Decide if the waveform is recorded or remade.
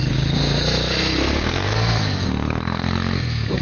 remade